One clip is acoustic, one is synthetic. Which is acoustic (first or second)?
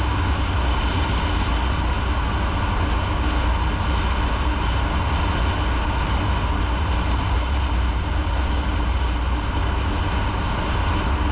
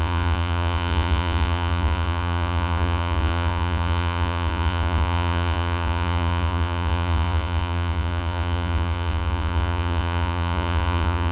first